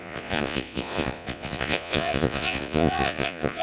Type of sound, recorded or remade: remade